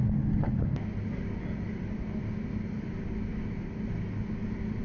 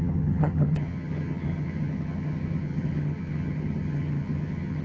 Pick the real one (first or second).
first